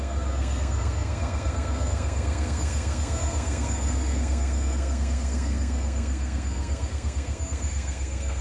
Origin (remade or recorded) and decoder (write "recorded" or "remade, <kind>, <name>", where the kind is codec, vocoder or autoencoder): remade, codec, SNAC